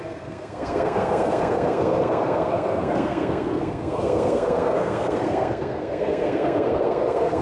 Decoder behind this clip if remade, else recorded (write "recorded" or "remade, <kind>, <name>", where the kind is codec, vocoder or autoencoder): remade, codec, SNAC